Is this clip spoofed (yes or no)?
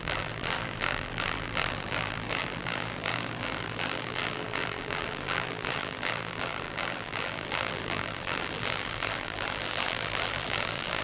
yes